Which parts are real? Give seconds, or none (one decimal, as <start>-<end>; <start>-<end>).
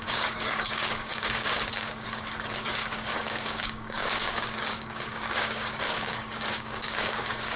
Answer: none